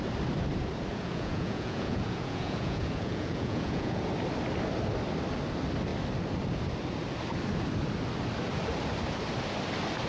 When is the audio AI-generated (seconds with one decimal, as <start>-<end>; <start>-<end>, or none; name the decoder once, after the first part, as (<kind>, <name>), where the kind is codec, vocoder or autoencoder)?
0.9-4.1 (vocoder, Vocos)